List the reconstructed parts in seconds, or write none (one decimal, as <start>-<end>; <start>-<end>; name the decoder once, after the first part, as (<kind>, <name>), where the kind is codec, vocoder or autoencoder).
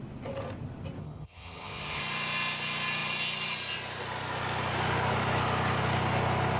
1.0-2.0 (vocoder, HiFi-GAN)